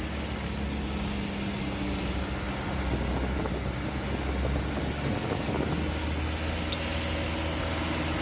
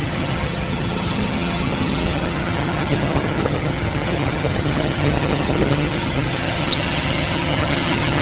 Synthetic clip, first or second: second